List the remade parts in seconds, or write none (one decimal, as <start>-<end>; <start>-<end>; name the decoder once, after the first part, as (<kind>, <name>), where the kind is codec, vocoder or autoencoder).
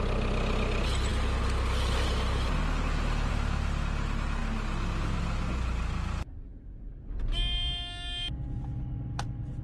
none